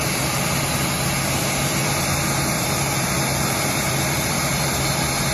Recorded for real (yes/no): no